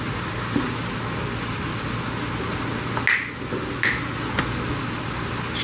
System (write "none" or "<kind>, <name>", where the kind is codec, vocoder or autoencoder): none